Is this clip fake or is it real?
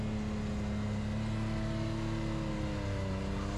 real